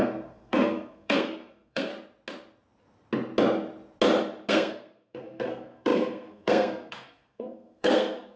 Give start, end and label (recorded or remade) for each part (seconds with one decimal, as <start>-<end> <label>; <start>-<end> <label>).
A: 0.0-1.9 remade; 1.9-4.5 recorded; 4.5-8.4 remade